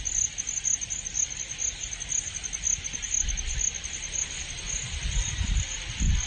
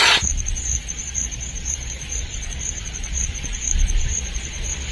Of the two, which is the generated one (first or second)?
second